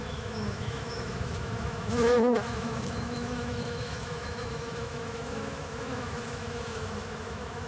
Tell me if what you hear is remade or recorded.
remade